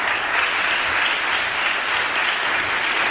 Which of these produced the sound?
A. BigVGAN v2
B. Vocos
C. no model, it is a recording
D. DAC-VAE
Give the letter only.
C